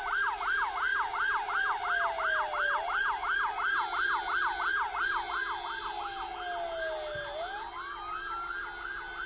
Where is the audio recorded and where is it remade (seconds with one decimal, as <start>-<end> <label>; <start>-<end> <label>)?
0.0-9.3 recorded